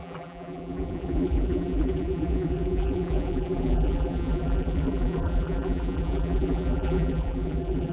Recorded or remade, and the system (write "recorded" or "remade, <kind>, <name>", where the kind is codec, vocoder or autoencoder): remade, vocoder, BigVGAN v2